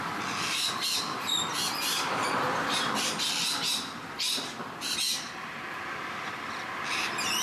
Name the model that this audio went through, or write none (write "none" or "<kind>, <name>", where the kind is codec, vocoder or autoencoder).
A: vocoder, BigVGAN v2